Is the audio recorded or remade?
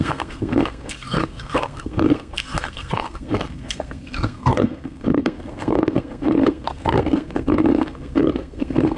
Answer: remade